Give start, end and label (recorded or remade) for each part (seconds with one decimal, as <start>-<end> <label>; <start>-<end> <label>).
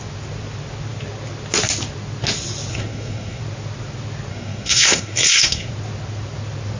0.0-2.7 recorded; 2.7-3.4 remade; 3.4-4.3 recorded; 4.3-5.7 remade; 5.7-6.8 recorded